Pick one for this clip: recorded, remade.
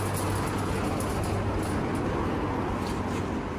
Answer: recorded